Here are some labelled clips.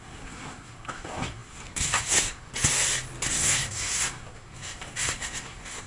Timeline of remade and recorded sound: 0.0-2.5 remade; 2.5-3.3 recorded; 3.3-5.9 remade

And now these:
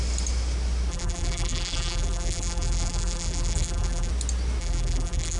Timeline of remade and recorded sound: 0.0-0.9 recorded; 0.9-4.1 remade; 4.1-4.6 recorded; 4.6-5.4 remade

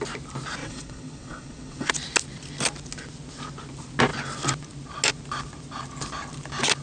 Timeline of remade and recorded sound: 0.0-0.6 recorded; 0.6-1.9 remade; 1.9-6.8 recorded

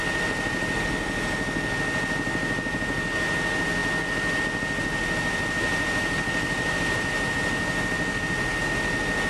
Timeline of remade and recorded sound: 0.0-9.3 recorded